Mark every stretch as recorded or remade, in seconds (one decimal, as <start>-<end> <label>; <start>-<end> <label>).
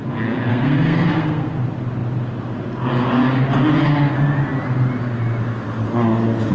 0.0-0.5 recorded; 0.5-1.5 remade; 1.5-6.5 recorded